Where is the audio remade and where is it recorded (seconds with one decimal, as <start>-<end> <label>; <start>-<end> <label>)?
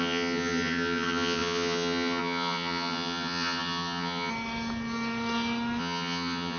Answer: 0.0-4.3 remade; 4.3-5.8 recorded; 5.8-6.6 remade